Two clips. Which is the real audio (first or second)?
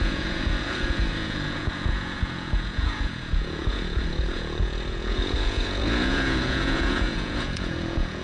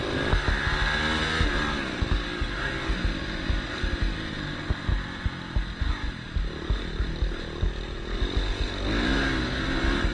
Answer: second